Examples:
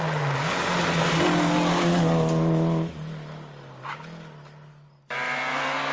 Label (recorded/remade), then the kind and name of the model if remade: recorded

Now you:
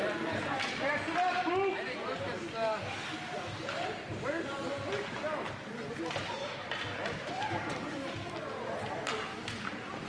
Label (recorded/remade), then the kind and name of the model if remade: recorded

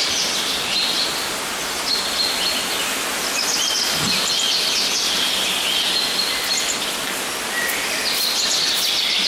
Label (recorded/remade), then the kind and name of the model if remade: recorded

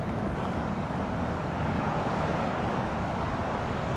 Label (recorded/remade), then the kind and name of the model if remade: remade, codec, DAC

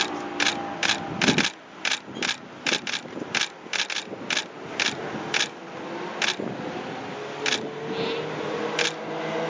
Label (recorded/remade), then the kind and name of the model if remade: recorded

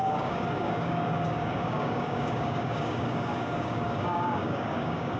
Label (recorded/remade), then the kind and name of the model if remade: remade, codec, DAC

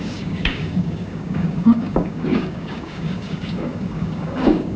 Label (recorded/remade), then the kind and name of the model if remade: remade, codec, DAC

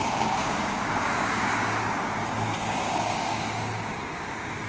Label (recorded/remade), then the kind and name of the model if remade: remade, codec, DAC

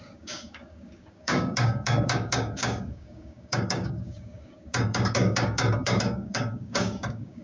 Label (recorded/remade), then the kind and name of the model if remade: remade, codec, DAC